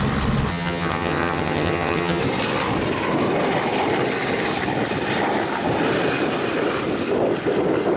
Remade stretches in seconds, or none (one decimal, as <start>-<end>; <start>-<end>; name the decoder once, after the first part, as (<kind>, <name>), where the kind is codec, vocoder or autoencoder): 0.5-2.2 (vocoder, HiFi-GAN)